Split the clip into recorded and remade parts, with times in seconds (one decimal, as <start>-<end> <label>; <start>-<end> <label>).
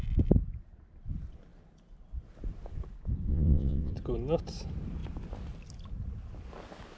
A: 0.0-3.3 recorded; 3.3-3.9 remade; 3.9-7.0 recorded